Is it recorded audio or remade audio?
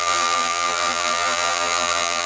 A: remade